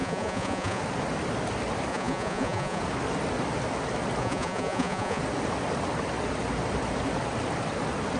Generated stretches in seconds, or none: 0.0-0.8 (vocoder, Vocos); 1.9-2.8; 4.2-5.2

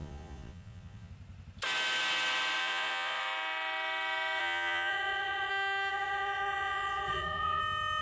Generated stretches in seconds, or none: 0.0-1.1 (vocoder, Vocos); 2.6-3.2; 4.4-5.5; 5.9-7.6

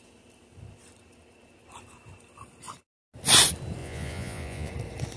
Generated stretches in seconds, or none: 3.8-4.7 (vocoder, Vocos)

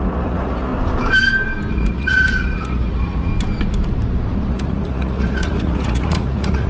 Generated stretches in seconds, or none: 0.0-0.7 (vocoder, Vocos); 1.7-3.3; 4.5-6.7

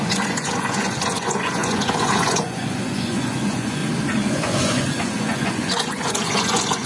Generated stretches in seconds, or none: 0.0-3.8 (vocoder, Vocos); 4.3-6.9

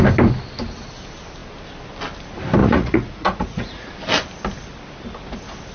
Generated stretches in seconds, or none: 2.6-3.9 (vocoder, Vocos)

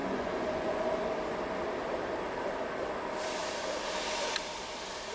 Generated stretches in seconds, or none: 0.0-0.8 (vocoder, Vocos)